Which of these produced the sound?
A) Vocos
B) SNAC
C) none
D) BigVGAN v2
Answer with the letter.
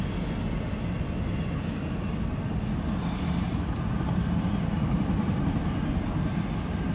C